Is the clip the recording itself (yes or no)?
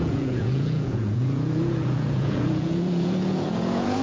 no